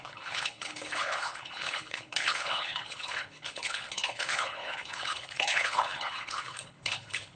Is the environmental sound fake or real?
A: fake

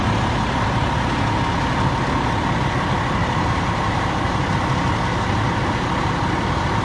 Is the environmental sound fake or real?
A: real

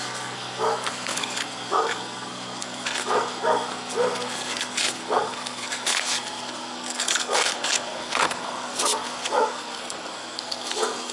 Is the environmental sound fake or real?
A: fake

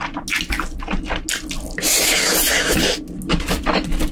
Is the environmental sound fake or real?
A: real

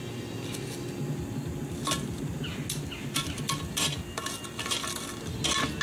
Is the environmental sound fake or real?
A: real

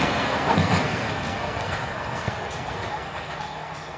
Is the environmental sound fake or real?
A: fake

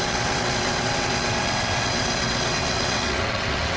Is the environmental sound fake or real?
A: fake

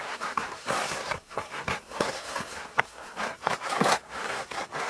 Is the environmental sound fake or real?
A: fake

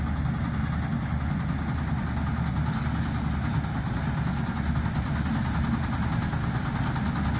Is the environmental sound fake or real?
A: real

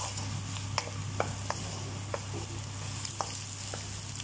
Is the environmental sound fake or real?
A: real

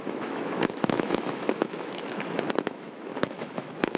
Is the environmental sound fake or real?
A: fake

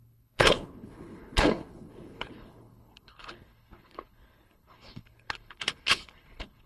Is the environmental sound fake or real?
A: fake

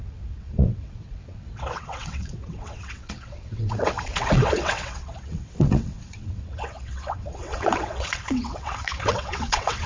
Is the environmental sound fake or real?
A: fake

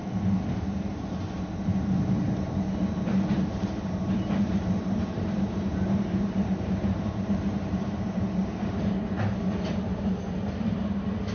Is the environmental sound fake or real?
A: fake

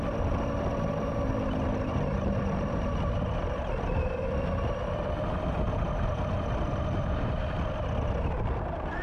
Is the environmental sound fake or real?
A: real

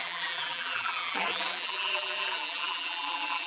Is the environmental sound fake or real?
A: fake